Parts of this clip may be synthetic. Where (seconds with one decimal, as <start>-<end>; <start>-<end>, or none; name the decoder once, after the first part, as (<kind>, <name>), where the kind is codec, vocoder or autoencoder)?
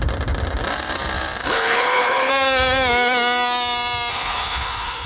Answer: 1.4-2.3 (codec, HILCodec); 4.1-5.1